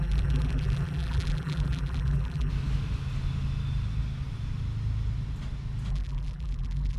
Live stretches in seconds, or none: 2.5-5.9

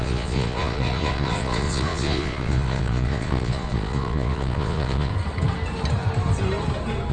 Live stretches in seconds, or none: 5.1-7.1

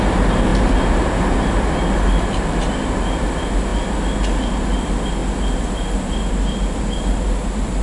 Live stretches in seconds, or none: 0.0-7.8

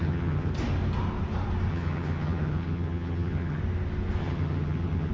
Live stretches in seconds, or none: 0.5-1.7; 3.6-4.2